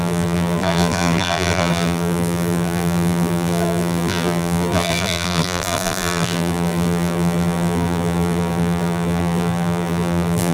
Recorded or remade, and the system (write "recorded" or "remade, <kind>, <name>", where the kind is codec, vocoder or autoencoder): remade, vocoder, BigVGAN v2